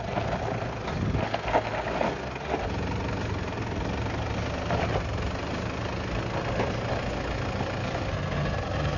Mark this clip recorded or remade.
recorded